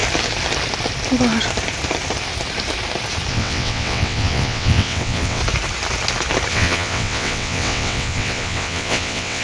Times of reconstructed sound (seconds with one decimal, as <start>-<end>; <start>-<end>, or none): 3.3-5.4; 6.5-9.4